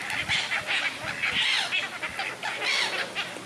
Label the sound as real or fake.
real